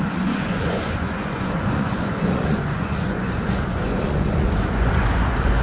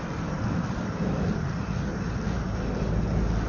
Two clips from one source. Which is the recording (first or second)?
second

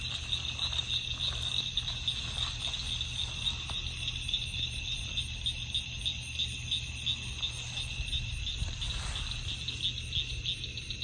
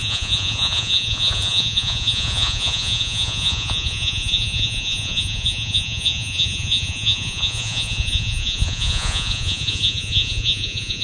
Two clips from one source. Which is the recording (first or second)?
first